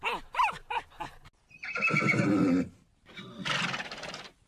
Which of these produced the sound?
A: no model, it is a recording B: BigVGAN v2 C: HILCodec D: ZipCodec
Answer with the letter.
A